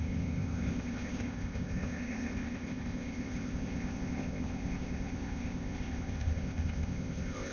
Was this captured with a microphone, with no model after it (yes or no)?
no